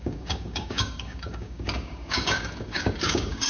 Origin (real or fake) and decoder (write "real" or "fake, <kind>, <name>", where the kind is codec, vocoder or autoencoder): fake, codec, DAC